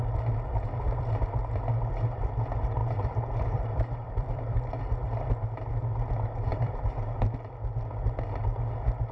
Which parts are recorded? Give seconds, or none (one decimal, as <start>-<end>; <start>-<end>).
0.0-2.8; 4.8-6.5; 7.2-9.1